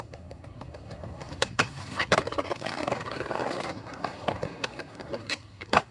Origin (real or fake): fake